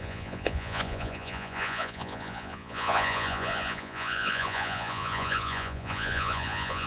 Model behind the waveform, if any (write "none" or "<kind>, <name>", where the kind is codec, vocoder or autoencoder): vocoder, Vocos